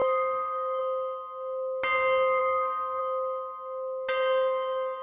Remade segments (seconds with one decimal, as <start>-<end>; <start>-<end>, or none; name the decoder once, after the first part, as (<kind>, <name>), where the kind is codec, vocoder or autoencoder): 0.0-0.8 (codec, SNAC); 2.4-3.0